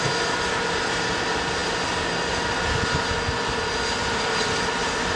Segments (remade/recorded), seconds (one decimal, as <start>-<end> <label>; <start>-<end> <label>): 0.0-5.2 recorded